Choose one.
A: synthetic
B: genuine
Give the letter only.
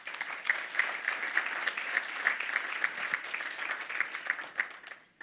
B